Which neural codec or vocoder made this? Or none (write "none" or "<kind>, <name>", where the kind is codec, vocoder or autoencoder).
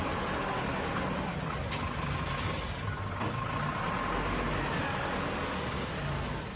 none